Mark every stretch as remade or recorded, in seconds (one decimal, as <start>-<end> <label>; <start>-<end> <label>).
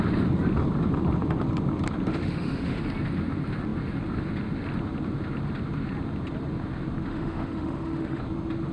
0.0-2.1 recorded; 2.1-2.8 remade; 2.8-7.1 recorded; 7.1-8.2 remade; 8.2-8.7 recorded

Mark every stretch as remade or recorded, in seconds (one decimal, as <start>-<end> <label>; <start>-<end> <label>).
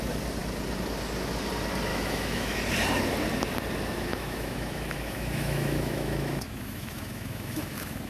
0.0-1.9 recorded; 1.9-2.6 remade; 2.6-4.1 recorded; 4.1-8.1 remade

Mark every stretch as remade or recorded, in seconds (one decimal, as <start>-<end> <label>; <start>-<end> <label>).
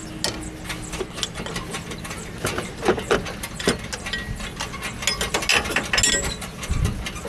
0.0-7.3 recorded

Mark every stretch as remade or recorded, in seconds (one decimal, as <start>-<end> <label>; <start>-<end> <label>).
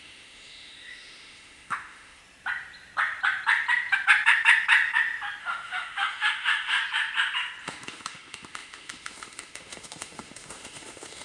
0.0-2.2 remade; 2.2-5.4 recorded; 5.4-6.8 remade; 6.8-7.6 recorded; 7.6-11.2 remade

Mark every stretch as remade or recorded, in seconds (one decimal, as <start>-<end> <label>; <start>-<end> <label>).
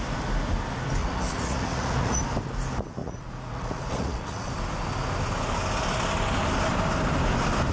0.0-1.0 recorded; 1.0-2.2 remade; 2.2-3.0 recorded; 3.0-4.5 remade; 4.5-7.7 recorded